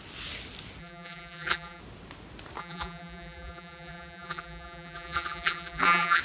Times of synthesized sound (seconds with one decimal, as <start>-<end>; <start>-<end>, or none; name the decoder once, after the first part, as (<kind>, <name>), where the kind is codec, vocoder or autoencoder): 0.8-1.8 (vocoder, BigVGAN v2); 2.6-6.2

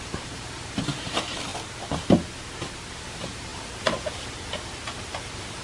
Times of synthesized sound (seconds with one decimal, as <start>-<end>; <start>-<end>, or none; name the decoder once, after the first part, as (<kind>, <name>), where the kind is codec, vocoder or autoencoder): 0.0-1.5 (vocoder, BigVGAN v2); 3.0-3.5

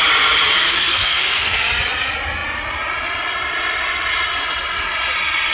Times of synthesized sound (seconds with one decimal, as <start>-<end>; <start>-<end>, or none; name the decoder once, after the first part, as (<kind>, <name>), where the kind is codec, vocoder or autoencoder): 0.7-1.6 (codec, SNAC)

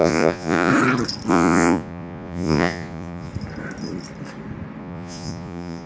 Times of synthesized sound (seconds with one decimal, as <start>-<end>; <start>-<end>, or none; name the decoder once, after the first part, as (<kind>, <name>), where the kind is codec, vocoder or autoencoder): 0.0-0.7 (vocoder, Vocos); 1.3-3.3; 4.8-5.9